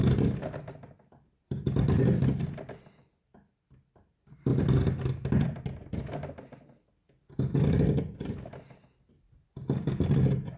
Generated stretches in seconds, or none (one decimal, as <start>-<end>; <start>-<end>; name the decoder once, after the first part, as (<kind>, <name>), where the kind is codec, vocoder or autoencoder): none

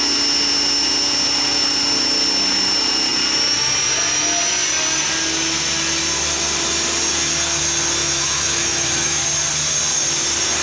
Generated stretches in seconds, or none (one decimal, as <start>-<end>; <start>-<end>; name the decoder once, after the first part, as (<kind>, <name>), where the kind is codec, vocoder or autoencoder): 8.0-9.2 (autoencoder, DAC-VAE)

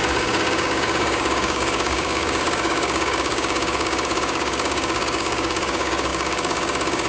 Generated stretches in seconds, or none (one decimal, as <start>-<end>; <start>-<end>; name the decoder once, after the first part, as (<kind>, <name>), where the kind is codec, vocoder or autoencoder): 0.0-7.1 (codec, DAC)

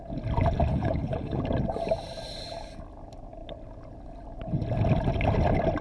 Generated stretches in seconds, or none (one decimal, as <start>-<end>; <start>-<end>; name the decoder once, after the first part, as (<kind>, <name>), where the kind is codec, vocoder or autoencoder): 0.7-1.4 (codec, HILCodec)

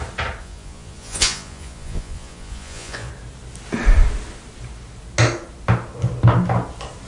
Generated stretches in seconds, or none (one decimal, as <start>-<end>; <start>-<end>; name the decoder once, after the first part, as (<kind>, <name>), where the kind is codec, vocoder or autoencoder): 0.4-3.1 (vocoder, Vocos)